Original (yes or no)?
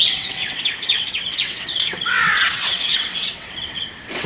no